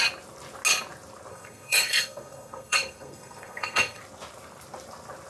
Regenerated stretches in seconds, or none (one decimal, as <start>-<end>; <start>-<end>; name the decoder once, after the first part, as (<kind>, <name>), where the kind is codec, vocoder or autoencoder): 1.3-4.0 (codec, SNAC)